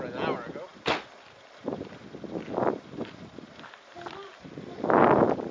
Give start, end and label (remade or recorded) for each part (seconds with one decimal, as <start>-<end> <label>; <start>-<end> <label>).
0.0-5.5 recorded